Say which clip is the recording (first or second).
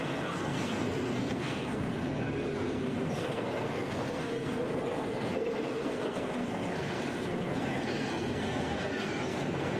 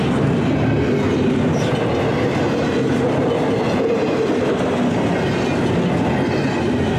second